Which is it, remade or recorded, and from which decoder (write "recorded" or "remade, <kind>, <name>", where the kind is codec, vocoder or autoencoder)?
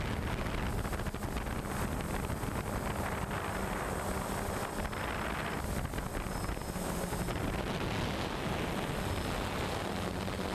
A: recorded